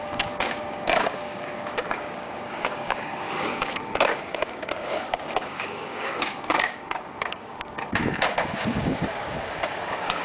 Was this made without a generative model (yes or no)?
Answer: no